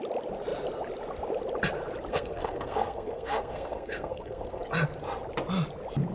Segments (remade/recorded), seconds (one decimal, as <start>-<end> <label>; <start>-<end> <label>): 0.0-2.1 recorded; 2.1-4.6 remade; 4.6-6.1 recorded